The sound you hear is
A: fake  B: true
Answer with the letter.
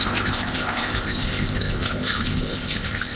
A